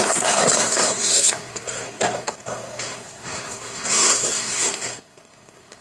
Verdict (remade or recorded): remade